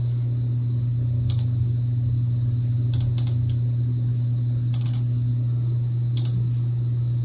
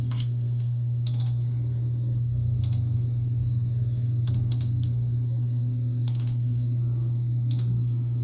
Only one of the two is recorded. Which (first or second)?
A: first